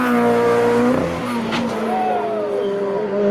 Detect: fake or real real